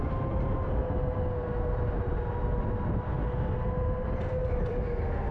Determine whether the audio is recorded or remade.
recorded